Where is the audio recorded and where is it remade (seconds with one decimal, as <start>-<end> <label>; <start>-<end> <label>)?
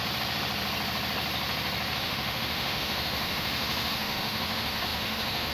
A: 0.0-2.0 recorded; 2.0-5.5 remade